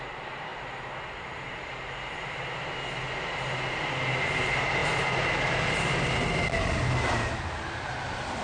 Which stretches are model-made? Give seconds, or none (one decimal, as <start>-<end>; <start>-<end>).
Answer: none